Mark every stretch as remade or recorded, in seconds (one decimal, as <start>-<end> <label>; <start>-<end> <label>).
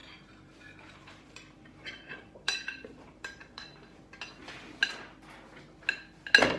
0.0-4.0 remade; 4.0-6.6 recorded